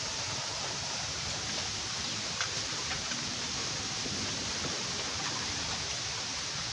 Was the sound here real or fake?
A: fake